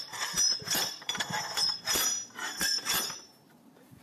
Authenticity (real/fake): fake